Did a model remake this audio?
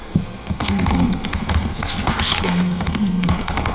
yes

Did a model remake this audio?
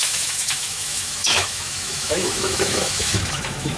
yes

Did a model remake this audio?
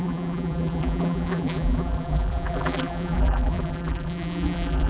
yes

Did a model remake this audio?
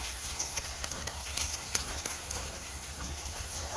yes